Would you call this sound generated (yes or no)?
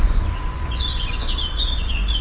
yes